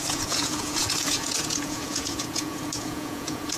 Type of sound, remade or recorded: remade